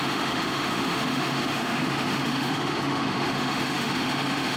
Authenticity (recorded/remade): remade